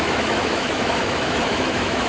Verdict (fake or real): fake